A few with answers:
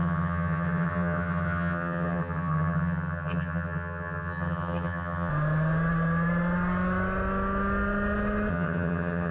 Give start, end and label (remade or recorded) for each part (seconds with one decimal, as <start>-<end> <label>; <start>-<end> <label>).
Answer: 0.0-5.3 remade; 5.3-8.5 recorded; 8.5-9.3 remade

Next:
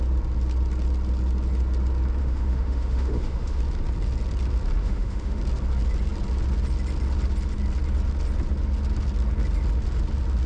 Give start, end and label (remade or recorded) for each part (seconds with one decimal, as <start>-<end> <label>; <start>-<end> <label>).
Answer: 0.0-2.2 recorded; 2.2-3.6 remade; 3.6-4.8 recorded; 4.8-5.4 remade; 5.4-10.5 recorded

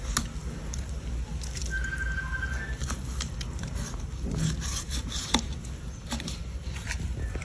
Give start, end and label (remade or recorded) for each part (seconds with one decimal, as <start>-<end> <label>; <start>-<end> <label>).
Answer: 0.0-7.4 recorded

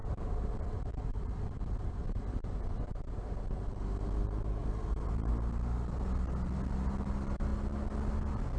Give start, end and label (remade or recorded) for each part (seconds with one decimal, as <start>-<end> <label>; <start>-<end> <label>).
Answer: 0.0-3.0 remade; 3.0-4.6 recorded; 4.6-5.3 remade; 5.3-8.6 recorded

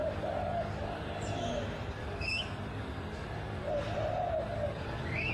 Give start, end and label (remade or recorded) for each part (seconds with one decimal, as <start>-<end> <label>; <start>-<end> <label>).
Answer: 0.0-1.4 remade; 1.4-2.0 recorded; 2.0-3.7 remade; 3.7-4.4 recorded; 4.4-5.3 remade

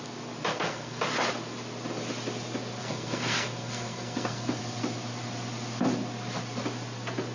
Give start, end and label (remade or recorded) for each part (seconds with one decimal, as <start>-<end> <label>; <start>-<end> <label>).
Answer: 0.0-0.5 recorded; 0.5-1.0 remade; 1.0-2.8 recorded; 2.8-4.6 remade; 4.6-7.3 recorded